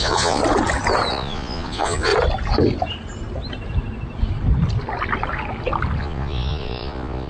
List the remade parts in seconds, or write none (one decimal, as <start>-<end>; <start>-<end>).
0.0-0.4; 1.1-2.1; 6.0-7.3